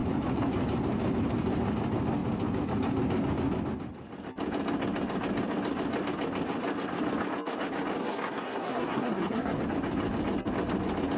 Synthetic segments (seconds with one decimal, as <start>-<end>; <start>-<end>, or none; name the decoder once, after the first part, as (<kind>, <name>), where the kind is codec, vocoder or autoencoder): 8.0-9.6 (codec, SNAC)